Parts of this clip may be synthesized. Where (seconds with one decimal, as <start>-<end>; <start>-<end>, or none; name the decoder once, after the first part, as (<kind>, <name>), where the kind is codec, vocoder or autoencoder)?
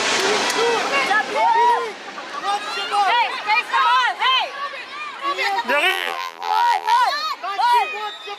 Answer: 5.9-7.0 (vocoder, BigVGAN v2)